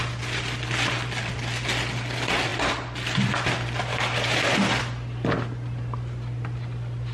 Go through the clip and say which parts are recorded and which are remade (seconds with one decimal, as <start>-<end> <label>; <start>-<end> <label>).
0.0-7.1 recorded